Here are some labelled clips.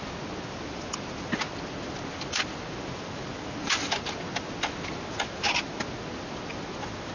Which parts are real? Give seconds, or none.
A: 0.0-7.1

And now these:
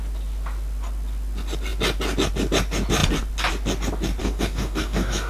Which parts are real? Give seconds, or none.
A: 0.0-4.2

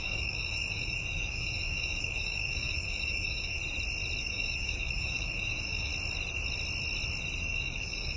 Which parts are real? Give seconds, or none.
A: 3.6-4.2; 5.9-7.4

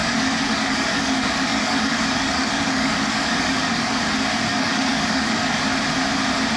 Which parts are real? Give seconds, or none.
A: 4.0-4.5; 5.6-6.6

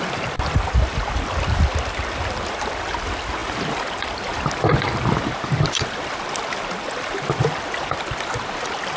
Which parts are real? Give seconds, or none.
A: 0.0-9.0

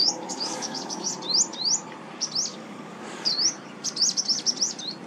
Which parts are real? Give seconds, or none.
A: 1.1-2.5; 3.3-5.1

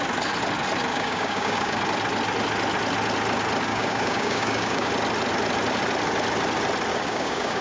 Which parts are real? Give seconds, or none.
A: 0.0-0.9; 1.8-3.7; 4.9-6.9